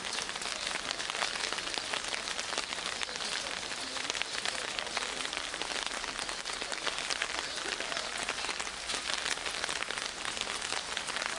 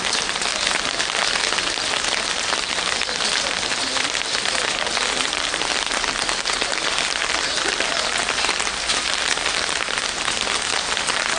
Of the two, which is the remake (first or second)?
second